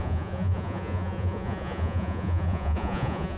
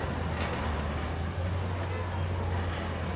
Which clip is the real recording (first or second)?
second